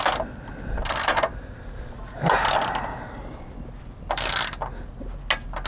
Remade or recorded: recorded